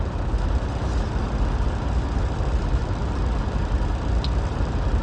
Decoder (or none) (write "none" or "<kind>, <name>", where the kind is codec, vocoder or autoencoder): none